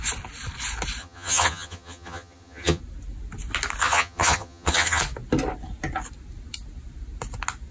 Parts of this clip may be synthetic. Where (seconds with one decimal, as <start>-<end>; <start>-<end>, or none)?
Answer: 1.0-2.8; 3.8-5.0